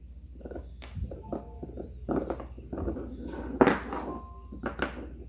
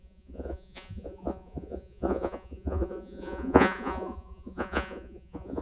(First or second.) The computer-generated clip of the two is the second